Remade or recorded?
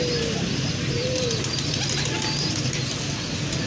recorded